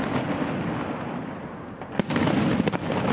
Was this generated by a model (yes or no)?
no